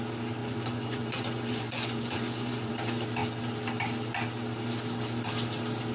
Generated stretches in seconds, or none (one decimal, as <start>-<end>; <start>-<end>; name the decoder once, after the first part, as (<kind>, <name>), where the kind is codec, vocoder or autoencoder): 0.4-2.7 (vocoder, Vocos)